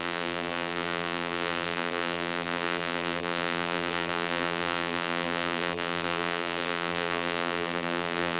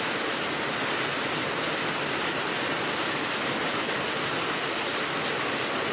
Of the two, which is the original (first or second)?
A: second